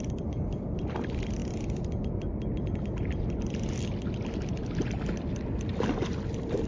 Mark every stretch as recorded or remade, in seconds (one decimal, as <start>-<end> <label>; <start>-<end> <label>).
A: 0.0-6.7 recorded